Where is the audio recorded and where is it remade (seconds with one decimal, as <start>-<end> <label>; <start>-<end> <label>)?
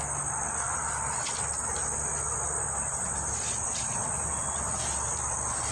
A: 0.0-5.7 recorded